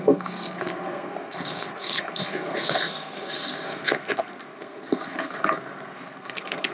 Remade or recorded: remade